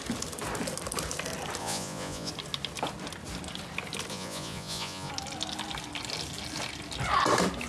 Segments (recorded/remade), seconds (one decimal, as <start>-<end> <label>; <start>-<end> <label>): 0.0-1.6 recorded; 1.6-2.3 remade; 2.3-4.1 recorded; 4.1-5.1 remade; 5.1-7.7 recorded